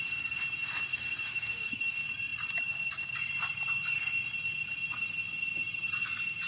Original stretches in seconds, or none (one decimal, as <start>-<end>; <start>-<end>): 0.0-0.9; 1.8-6.5